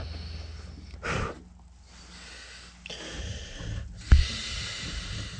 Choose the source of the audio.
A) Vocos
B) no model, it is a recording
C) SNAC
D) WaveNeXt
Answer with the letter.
B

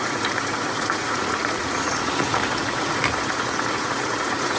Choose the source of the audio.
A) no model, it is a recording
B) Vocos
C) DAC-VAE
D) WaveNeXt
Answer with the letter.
B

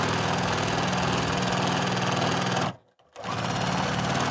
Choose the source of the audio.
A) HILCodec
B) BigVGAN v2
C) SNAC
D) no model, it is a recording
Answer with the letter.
D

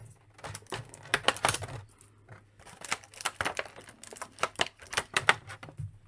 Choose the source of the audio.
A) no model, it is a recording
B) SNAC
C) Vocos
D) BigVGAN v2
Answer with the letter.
D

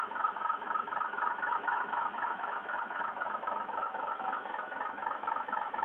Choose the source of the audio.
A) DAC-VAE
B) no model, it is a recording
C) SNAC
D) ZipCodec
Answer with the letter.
A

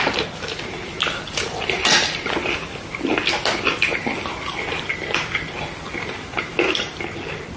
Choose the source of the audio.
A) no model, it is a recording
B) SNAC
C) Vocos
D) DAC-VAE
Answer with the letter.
A